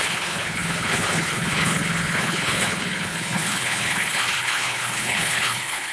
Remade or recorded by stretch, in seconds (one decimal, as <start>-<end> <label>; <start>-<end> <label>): 0.0-5.9 remade